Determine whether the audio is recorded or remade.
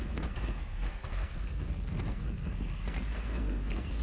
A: remade